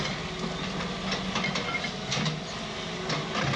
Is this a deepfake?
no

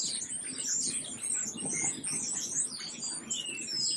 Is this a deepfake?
no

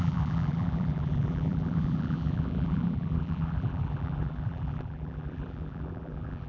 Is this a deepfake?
yes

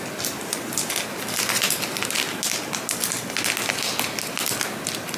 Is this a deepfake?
no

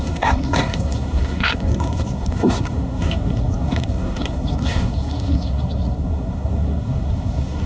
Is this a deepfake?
yes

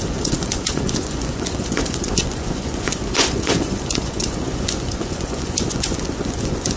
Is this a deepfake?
yes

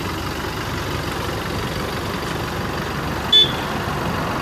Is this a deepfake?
no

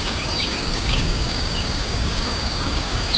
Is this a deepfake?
yes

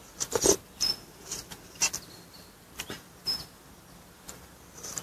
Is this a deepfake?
no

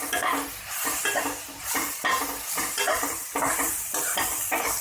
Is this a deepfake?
no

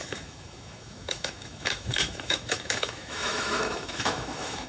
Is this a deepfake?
yes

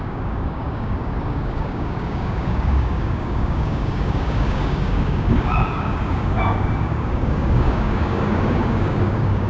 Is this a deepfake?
yes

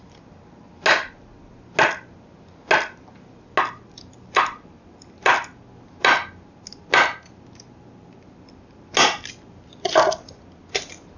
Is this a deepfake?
no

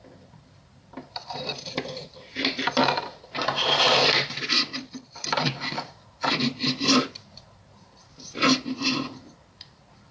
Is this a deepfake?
yes